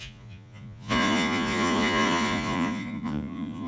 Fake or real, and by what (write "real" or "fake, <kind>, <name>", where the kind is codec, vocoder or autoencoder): fake, vocoder, Vocos